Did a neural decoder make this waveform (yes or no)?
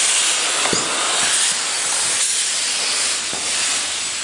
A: no